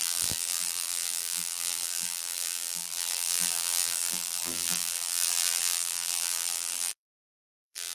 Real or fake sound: fake